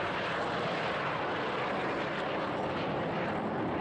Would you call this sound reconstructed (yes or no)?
no